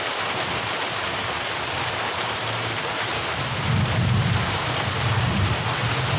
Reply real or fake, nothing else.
real